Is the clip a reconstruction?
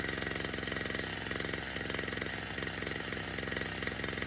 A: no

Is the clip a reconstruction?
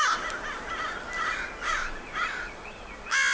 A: no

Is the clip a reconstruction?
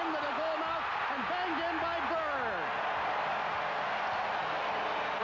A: no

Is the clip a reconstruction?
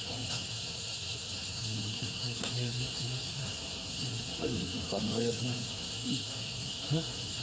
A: yes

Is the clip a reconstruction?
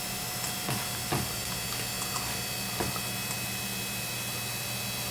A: no